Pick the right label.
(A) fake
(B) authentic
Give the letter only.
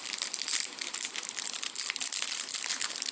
B